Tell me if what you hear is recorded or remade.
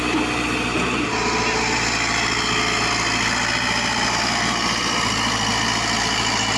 recorded